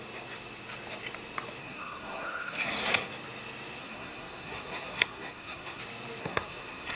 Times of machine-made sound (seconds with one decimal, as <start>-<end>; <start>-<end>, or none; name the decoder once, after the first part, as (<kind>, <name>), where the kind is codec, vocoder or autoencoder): 1.6-3.1 (codec, SNAC); 3.8-5.8; 6.2-7.0